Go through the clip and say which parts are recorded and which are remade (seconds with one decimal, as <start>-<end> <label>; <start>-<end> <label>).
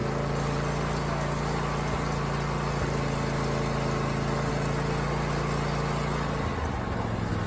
0.0-7.5 recorded